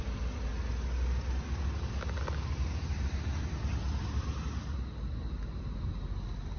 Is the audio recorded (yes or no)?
yes